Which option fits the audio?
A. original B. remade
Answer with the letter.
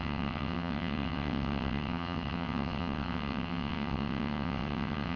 B